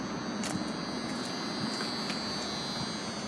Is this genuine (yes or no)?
yes